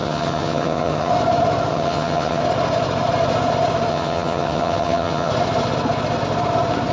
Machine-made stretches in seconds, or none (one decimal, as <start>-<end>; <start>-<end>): 0.0-1.1; 1.7-2.4; 3.9-5.3